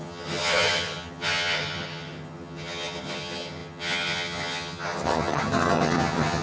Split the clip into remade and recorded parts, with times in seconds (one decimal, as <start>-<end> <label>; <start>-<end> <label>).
0.0-6.4 remade